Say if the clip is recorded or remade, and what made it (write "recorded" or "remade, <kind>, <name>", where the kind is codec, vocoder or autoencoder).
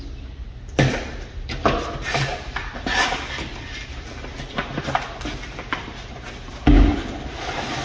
recorded